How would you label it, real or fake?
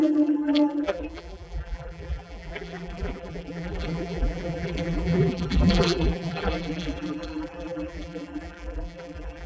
fake